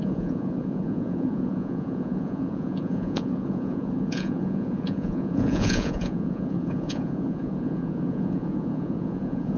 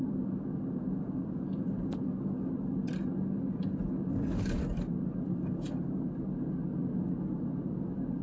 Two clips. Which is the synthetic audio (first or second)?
first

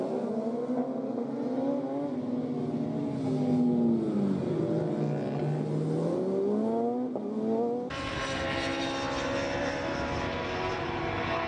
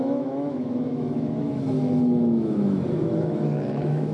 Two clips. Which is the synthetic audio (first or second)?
second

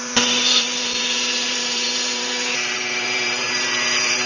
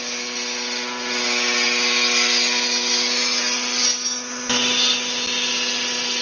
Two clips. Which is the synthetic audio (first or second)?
first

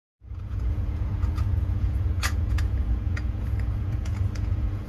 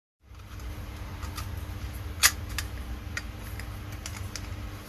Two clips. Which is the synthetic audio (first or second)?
first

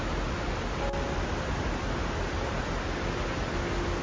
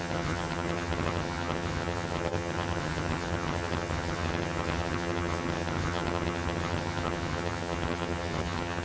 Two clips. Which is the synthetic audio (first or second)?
second